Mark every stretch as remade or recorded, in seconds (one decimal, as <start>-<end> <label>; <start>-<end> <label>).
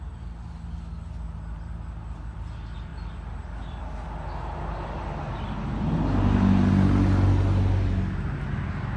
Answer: 0.0-9.0 recorded